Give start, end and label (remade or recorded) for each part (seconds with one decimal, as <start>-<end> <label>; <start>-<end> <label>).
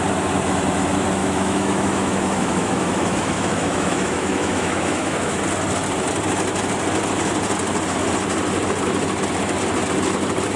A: 0.0-1.2 recorded; 1.2-5.4 remade; 5.4-10.6 recorded